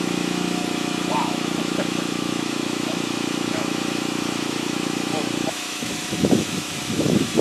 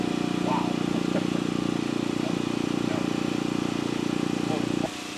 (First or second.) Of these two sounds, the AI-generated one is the first